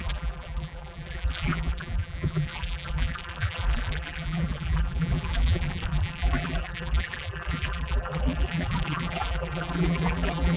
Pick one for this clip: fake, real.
fake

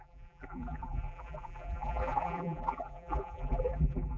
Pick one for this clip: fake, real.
fake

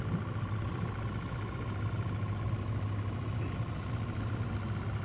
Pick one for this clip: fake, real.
real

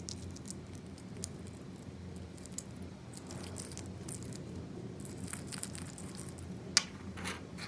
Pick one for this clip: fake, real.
real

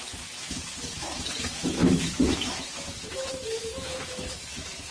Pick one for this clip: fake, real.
fake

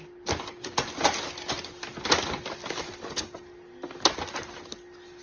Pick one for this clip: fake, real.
real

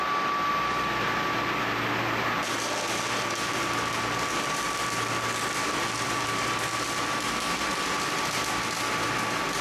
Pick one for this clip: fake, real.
real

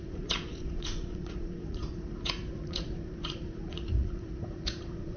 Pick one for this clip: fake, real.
fake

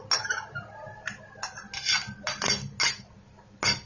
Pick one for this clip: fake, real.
real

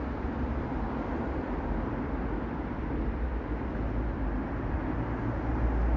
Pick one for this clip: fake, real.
real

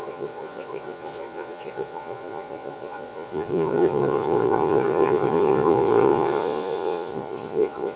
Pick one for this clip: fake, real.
fake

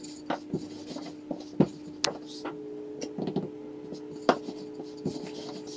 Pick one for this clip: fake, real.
real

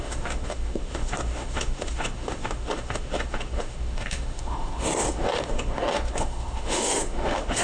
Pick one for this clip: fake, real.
fake